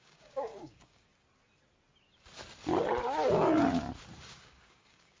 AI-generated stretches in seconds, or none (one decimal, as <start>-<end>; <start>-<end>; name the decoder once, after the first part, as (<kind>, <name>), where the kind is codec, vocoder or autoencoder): 0.0-1.1 (codec, DAC); 4.2-5.2